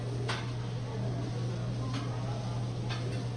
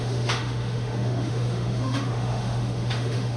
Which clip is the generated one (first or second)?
second